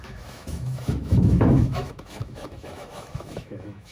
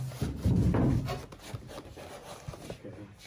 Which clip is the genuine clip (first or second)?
second